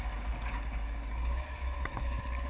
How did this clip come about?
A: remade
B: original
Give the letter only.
A